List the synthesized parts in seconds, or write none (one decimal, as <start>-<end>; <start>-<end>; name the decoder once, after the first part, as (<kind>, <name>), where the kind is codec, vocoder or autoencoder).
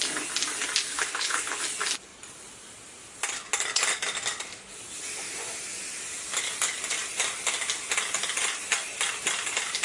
0.9-1.6 (codec, HILCodec)